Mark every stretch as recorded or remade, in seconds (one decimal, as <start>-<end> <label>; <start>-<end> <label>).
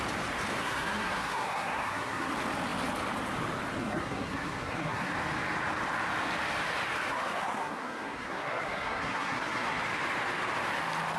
0.0-0.6 recorded; 0.6-2.3 remade; 2.3-3.8 recorded; 3.8-5.1 remade; 5.1-7.1 recorded; 7.1-9.8 remade; 9.8-11.2 recorded